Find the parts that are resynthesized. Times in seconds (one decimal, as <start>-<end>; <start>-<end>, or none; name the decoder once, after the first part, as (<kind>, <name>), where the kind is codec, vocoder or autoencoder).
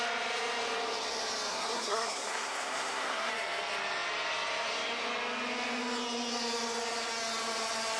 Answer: 1.5-3.3 (codec, SNAC)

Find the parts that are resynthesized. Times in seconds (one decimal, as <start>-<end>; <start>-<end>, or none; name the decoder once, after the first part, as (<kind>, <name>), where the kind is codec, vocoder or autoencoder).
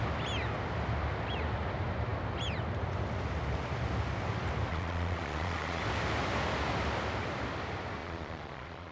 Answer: 4.7-5.8 (vocoder, Vocos); 8.0-8.9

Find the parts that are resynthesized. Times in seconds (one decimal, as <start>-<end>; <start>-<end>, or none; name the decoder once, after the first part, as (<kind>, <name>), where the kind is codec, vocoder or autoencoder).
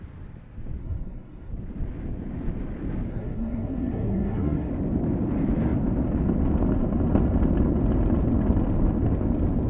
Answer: 0.8-1.5 (codec, SNAC); 3.1-4.7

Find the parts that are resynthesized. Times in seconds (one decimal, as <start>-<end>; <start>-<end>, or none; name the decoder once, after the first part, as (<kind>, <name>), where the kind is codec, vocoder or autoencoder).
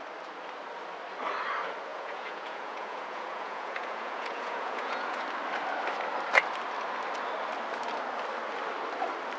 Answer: 1.9-5.2 (vocoder, Vocos)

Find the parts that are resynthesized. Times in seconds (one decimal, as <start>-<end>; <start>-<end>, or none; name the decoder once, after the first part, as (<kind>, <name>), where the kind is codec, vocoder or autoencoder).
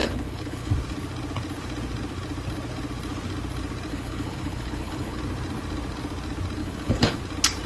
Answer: 0.0-0.7 (codec, HILCodec); 3.9-5.2; 6.6-7.2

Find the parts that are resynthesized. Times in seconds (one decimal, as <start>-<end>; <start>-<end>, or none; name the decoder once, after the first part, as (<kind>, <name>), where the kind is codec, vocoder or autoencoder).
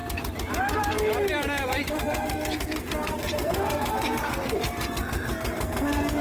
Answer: 1.9-6.2 (codec, SNAC)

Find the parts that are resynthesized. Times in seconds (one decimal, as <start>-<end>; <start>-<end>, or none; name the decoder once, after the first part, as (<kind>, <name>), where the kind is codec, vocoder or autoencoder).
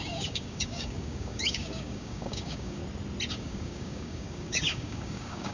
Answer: 0.0-2.8 (codec, DAC); 3.3-5.5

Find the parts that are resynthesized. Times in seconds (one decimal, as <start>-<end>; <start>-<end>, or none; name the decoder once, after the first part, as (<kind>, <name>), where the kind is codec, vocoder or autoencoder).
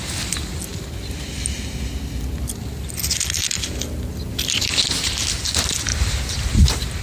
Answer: 5.9-7.0 (vocoder, BigVGAN v2)